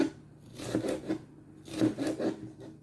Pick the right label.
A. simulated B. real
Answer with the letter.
B